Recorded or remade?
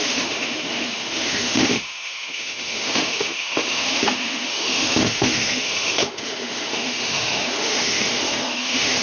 remade